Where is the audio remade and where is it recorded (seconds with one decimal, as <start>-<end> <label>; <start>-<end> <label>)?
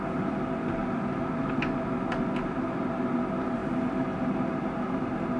0.0-5.4 recorded